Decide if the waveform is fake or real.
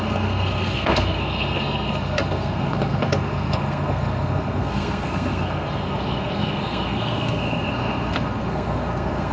fake